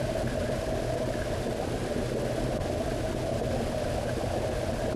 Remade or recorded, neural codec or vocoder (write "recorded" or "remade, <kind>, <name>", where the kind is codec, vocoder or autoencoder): recorded